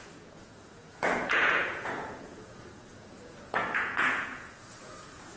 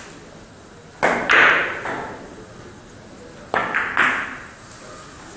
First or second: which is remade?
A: first